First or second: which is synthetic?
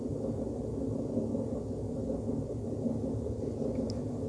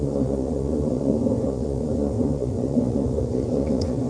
second